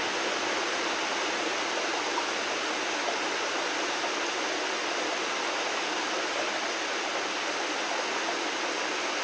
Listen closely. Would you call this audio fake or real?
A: real